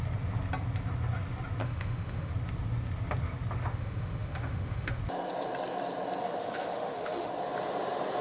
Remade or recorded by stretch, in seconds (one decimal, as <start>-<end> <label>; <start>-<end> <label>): 0.0-1.6 recorded; 1.6-2.3 remade; 2.3-3.7 recorded; 3.7-5.0 remade; 5.0-6.2 recorded; 6.2-7.3 remade; 7.3-8.2 recorded